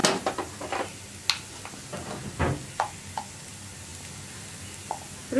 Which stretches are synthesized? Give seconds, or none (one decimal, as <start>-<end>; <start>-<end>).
none